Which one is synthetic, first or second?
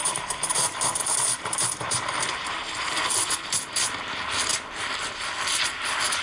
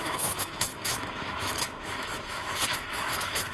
second